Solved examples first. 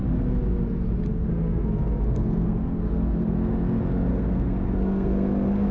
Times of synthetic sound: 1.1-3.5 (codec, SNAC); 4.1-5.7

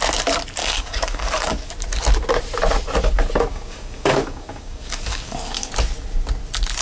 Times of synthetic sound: 0.6-1.7 (codec, DAC); 3.5-5.7